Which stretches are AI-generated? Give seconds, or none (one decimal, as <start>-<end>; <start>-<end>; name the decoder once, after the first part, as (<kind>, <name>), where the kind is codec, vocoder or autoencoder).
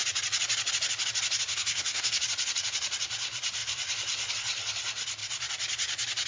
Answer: 1.5-2.2 (codec, SNAC)